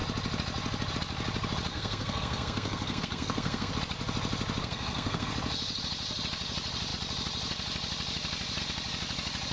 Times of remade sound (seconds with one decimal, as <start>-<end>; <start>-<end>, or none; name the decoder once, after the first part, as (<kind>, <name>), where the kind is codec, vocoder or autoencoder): 1.7-3.7 (codec, SNAC); 4.6-5.3